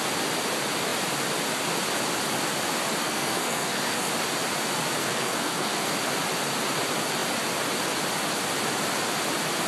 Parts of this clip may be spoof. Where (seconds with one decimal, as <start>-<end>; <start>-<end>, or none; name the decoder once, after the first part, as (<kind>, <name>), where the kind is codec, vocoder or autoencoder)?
3.0-4.1 (codec, SNAC); 5.0-5.9